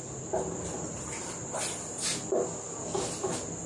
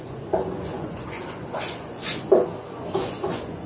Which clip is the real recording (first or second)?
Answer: first